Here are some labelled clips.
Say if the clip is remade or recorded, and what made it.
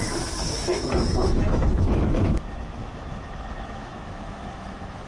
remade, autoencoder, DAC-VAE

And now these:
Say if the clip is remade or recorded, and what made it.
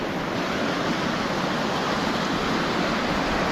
recorded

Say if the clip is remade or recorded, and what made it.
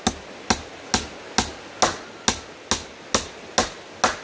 recorded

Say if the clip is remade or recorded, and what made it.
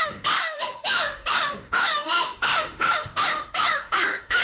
remade, autoencoder, DAC-VAE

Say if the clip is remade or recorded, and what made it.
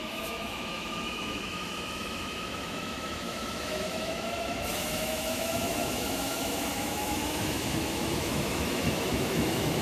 remade, autoencoder, DAC-VAE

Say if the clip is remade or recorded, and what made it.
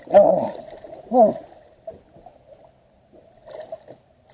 recorded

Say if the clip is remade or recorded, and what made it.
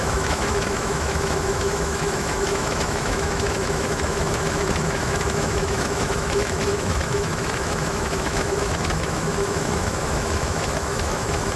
remade, autoencoder, DAC-VAE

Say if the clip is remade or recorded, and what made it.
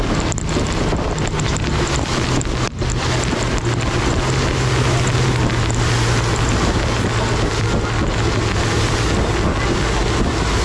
recorded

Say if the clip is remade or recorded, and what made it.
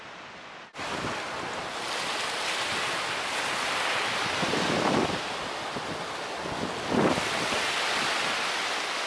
recorded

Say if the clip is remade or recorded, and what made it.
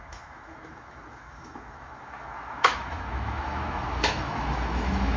remade, autoencoder, DAC-VAE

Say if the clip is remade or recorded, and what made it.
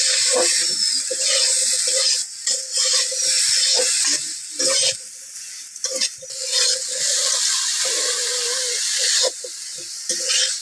recorded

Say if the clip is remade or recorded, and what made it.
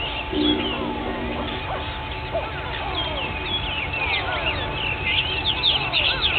recorded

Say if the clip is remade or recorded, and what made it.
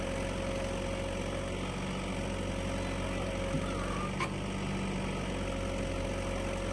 recorded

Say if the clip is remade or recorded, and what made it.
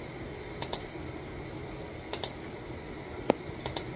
recorded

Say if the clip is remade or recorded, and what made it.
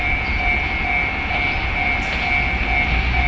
recorded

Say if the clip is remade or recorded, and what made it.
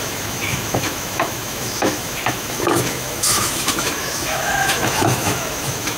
remade, autoencoder, DAC-VAE